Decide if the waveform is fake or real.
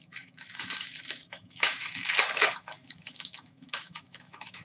fake